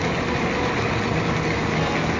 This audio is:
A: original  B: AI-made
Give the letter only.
A